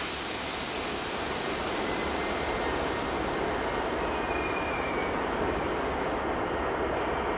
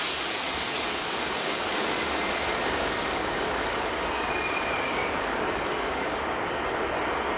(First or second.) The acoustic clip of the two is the first